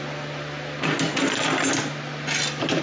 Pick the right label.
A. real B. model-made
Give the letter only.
A